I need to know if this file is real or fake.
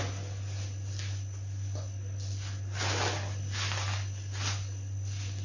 real